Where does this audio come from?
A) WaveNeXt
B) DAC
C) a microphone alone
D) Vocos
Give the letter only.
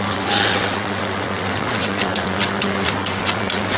A